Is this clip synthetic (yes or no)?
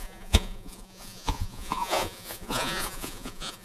yes